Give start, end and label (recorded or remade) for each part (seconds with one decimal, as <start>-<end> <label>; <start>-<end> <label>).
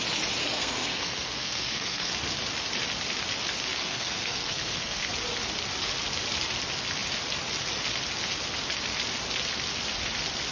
0.0-0.4 recorded; 0.4-2.1 remade; 2.1-3.8 recorded; 3.8-5.1 remade; 5.1-10.5 recorded